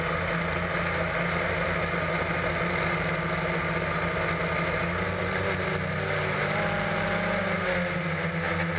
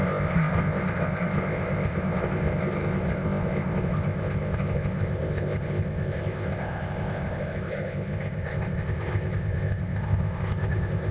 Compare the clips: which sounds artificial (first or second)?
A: second